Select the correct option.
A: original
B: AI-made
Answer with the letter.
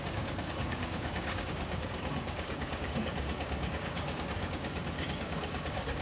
B